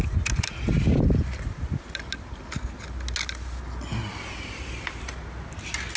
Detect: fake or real real